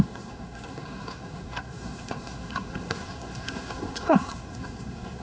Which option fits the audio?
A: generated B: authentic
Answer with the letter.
A